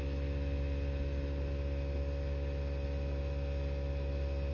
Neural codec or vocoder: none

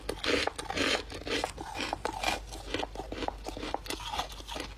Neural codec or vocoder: none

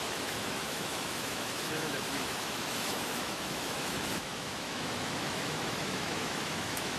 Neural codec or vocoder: autoencoder, DAC-VAE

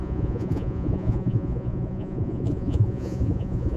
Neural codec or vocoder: vocoder, Vocos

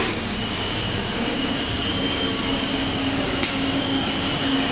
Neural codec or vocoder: codec, DAC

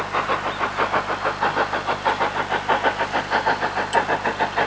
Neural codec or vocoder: none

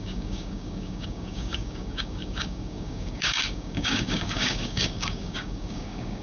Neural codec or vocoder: codec, DAC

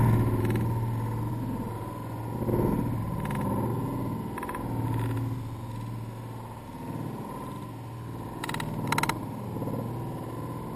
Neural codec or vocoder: none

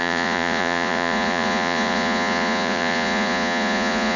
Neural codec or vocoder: vocoder, Vocos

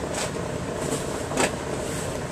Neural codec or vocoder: none